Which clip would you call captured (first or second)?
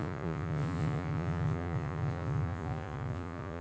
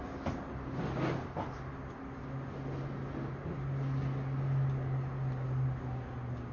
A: second